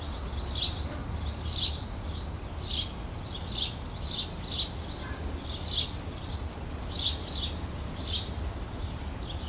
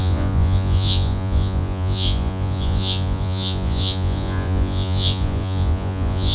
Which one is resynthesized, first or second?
second